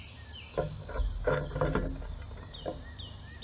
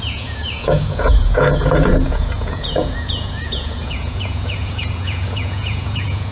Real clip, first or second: first